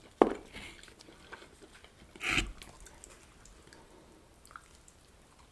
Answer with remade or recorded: recorded